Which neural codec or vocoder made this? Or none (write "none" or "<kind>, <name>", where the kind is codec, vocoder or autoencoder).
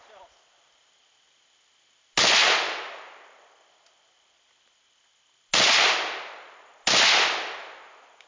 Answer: none